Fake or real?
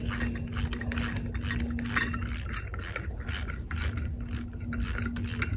real